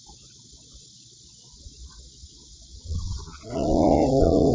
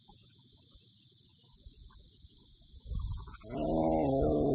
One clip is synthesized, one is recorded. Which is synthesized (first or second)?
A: first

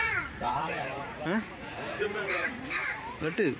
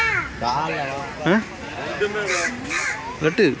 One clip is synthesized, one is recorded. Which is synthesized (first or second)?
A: first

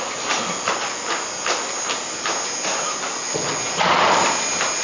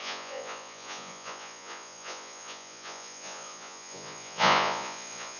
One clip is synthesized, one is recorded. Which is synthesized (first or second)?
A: second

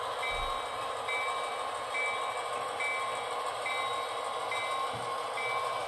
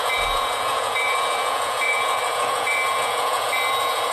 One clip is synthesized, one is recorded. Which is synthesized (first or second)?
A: second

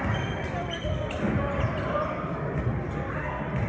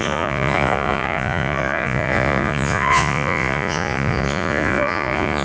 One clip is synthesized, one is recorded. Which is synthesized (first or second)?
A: second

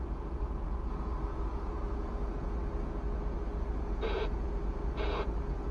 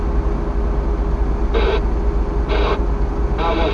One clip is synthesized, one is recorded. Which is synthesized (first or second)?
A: first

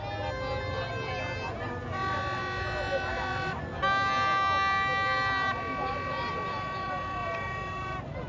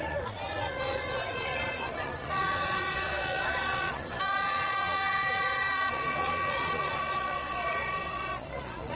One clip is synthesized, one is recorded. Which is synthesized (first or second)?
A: second